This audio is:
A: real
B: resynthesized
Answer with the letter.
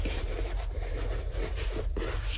B